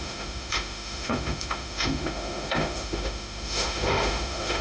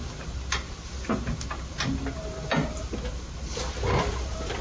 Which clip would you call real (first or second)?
second